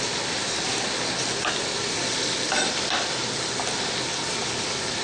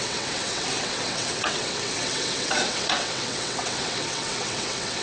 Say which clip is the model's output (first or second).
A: second